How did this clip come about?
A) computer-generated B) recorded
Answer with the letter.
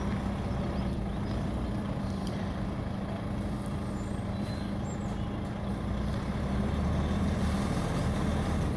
B